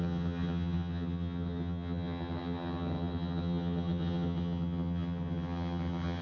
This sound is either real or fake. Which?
fake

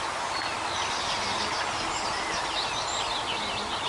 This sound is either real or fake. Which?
real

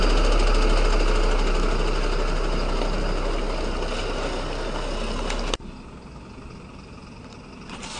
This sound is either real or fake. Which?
real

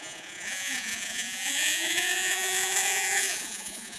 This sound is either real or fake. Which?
fake